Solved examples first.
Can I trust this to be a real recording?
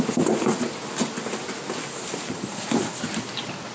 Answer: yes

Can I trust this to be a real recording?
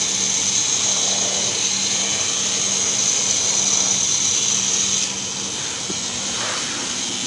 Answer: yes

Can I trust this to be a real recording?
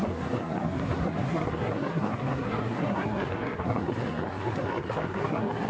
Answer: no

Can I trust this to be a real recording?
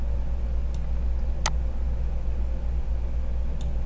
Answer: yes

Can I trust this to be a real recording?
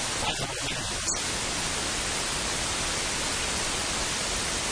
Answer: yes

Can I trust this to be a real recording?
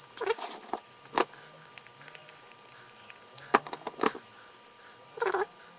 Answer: yes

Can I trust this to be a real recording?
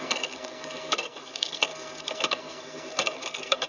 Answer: no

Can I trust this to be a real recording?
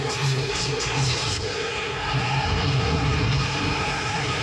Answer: no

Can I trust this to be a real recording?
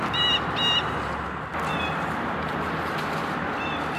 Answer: yes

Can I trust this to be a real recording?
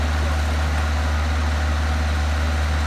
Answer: yes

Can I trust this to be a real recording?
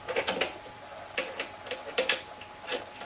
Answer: yes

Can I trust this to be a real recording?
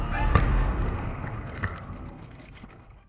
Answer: no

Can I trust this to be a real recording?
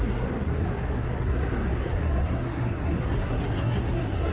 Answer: no